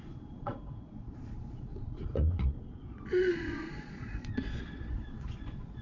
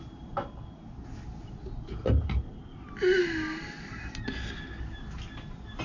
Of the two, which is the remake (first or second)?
first